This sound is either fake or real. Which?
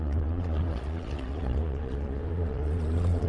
fake